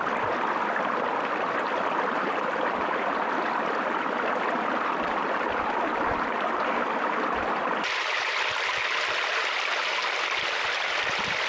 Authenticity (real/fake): real